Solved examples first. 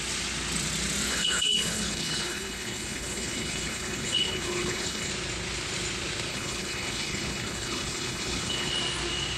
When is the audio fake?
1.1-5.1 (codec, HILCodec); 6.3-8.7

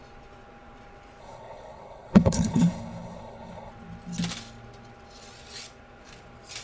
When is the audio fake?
1.2-3.7 (codec, HILCodec)